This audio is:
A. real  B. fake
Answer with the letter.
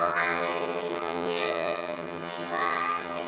B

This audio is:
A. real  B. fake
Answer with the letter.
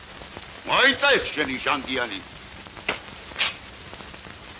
A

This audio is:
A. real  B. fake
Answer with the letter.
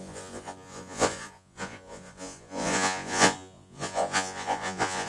B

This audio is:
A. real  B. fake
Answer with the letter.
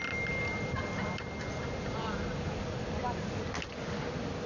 A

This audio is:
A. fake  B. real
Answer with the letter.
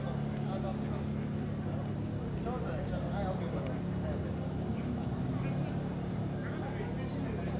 B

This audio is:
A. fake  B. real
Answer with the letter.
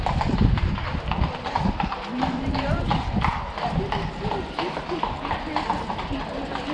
B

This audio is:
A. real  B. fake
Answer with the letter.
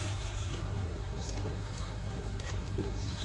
B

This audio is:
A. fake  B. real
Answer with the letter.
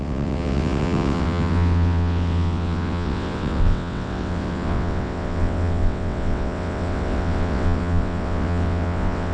A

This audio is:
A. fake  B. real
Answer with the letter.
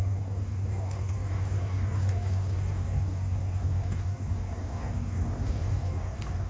A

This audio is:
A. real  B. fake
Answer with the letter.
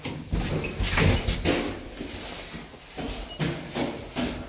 A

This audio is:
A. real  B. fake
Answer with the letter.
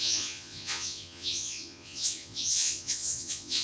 B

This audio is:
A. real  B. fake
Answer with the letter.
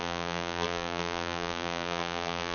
B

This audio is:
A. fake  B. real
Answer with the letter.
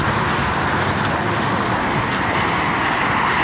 B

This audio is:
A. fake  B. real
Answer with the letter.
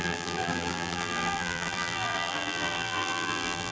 A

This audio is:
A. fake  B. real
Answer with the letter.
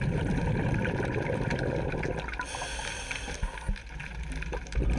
B